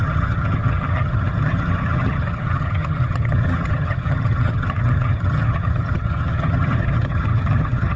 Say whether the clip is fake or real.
fake